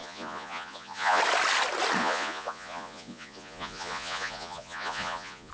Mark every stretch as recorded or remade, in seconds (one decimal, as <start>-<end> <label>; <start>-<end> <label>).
0.0-1.2 remade; 1.2-2.0 recorded; 2.0-5.5 remade